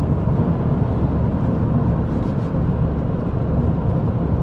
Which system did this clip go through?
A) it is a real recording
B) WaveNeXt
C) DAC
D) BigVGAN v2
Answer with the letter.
A